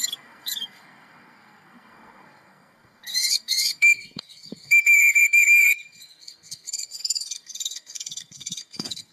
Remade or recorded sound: remade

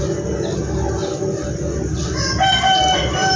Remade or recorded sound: recorded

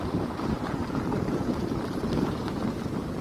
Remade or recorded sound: recorded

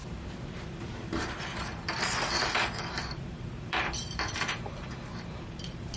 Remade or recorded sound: remade